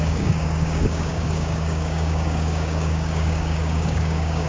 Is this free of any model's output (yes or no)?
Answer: no